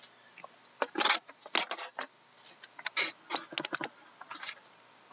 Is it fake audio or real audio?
real